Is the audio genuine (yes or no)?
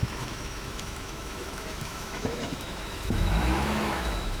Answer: no